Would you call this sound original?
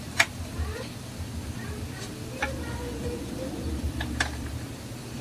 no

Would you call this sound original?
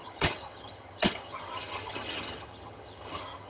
no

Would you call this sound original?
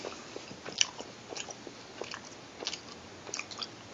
yes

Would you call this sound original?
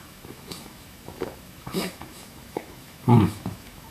no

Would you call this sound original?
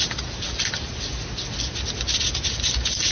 yes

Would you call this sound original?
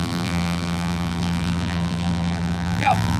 no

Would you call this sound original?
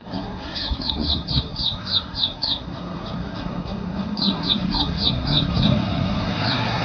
no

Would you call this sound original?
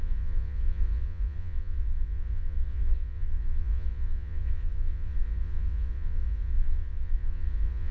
no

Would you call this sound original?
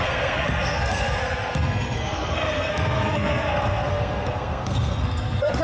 no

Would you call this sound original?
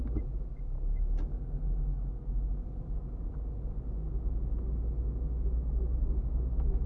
yes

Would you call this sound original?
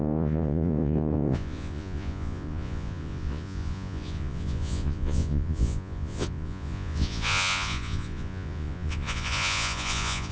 no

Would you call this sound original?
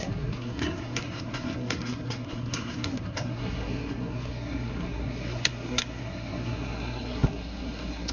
no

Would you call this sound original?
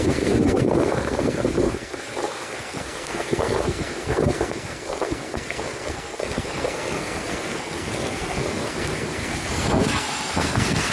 no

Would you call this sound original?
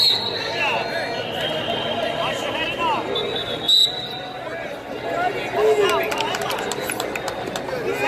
yes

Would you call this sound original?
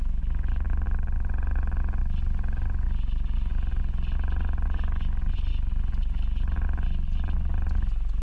yes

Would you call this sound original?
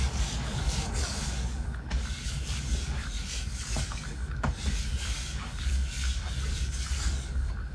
no